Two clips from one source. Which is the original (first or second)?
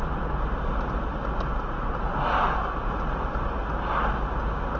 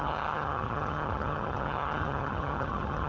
first